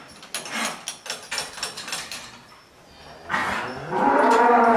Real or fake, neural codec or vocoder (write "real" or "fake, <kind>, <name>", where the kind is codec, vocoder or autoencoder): real